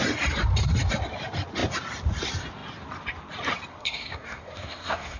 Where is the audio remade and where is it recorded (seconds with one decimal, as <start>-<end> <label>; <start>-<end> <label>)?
0.0-3.7 recorded; 3.7-5.2 remade